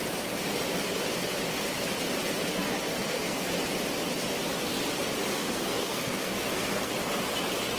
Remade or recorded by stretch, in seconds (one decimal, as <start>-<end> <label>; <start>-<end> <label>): 0.0-3.0 recorded; 3.0-3.5 remade; 3.5-5.4 recorded; 5.4-6.9 remade; 6.9-7.8 recorded